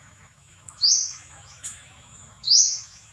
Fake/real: fake